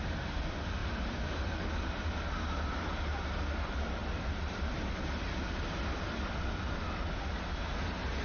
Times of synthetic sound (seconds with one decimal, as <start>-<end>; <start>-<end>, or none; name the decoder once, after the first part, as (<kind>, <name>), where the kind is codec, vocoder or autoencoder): 0.8-1.5 (vocoder, BigVGAN v2); 4.0-7.3

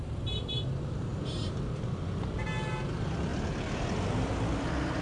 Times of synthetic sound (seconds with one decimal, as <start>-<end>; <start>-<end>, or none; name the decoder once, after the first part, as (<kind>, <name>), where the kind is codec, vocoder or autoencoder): 1.1-2.0 (vocoder, BigVGAN v2); 3.3-5.0

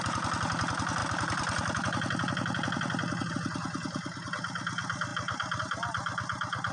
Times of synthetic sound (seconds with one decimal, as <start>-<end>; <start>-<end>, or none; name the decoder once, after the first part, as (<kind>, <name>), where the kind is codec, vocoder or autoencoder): 1.0-3.3 (vocoder, BigVGAN v2)

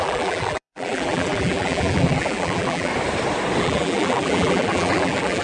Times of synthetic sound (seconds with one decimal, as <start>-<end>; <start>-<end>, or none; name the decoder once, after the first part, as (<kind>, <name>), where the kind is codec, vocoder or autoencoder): 0.0-2.9 (vocoder, BigVGAN v2); 3.6-5.4

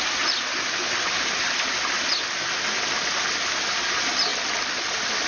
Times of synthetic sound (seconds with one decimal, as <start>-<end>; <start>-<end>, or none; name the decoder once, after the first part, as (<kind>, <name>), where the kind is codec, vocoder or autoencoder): none

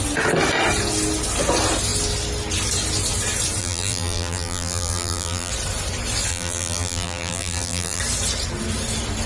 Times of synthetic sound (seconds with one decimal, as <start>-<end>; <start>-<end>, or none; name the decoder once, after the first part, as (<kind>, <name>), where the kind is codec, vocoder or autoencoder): 3.6-5.5 (vocoder, BigVGAN v2); 6.3-8.0

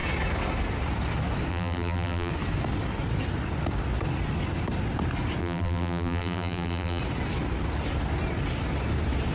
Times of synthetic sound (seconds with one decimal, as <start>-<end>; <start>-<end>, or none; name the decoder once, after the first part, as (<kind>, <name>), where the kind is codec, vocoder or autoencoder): 1.5-2.3 (vocoder, BigVGAN v2); 5.4-7.0

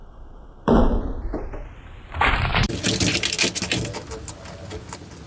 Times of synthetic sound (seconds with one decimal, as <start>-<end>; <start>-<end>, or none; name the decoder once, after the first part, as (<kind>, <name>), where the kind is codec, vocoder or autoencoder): 0.0-2.5 (vocoder, BigVGAN v2)